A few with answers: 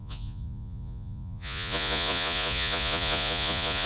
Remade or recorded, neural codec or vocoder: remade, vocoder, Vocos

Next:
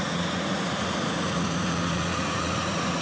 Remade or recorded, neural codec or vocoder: remade, vocoder, Vocos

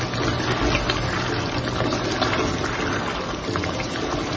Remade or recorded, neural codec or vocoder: recorded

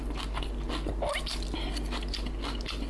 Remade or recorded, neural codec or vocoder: recorded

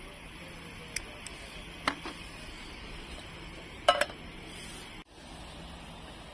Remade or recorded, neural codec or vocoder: recorded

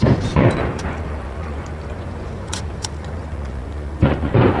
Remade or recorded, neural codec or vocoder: remade, vocoder, Vocos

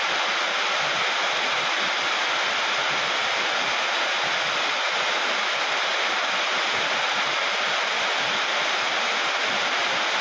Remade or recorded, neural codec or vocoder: recorded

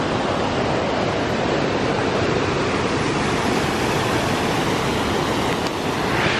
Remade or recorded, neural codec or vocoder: recorded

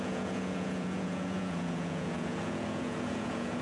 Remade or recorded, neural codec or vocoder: remade, vocoder, Vocos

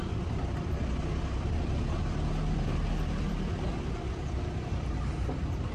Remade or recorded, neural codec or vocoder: remade, vocoder, BigVGAN v2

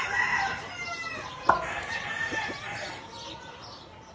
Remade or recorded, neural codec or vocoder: recorded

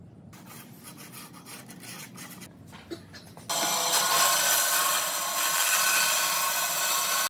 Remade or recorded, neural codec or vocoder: recorded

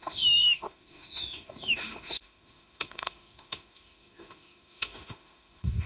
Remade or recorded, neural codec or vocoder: remade, autoencoder, DAC-VAE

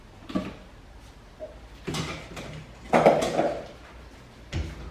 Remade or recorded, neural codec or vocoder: recorded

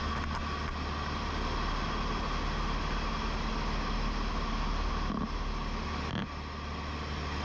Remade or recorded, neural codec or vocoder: recorded